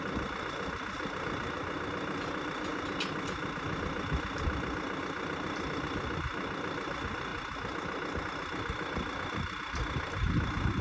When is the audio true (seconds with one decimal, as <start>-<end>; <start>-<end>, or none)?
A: 0.0-10.8